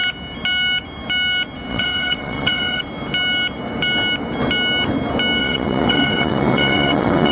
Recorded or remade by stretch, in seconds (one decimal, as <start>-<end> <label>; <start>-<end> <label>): 0.0-1.7 recorded; 1.7-2.8 remade; 2.8-5.4 recorded; 5.4-7.3 remade